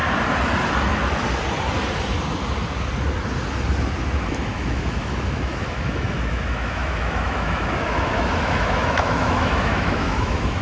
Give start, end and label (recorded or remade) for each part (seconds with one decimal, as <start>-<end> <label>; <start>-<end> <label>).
0.0-4.3 recorded; 4.3-10.6 remade